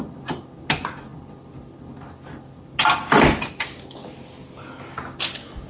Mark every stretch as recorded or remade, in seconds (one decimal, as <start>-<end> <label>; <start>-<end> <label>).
0.0-5.7 recorded